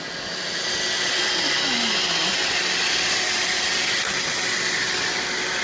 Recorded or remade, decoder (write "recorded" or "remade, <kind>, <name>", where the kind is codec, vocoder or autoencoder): recorded